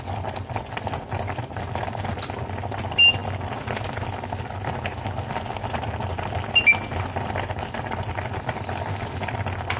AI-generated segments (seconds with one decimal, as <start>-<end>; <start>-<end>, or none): none